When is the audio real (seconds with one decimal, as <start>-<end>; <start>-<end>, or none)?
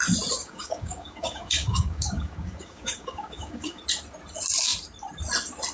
0.0-0.4; 3.8-5.7